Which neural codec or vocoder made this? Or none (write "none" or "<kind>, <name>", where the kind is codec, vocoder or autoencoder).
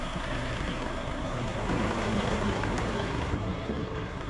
codec, SNAC